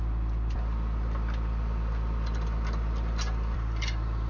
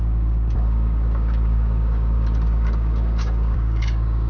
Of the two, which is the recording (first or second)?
first